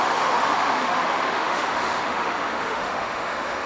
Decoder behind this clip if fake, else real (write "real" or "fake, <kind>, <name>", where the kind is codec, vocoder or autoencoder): fake, autoencoder, DAC-VAE